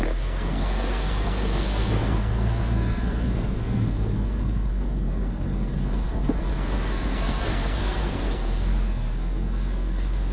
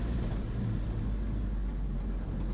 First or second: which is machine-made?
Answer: first